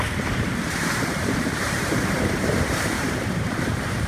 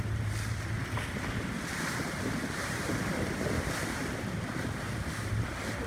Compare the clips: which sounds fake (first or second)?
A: first